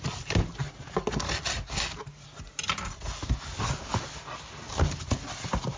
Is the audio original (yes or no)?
yes